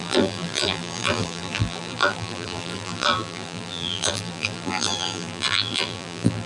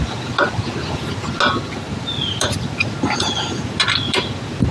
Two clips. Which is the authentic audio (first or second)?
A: second